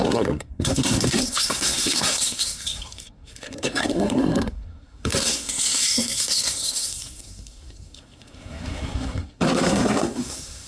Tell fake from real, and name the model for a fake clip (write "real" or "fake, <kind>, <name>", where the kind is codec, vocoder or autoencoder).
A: fake, codec, SNAC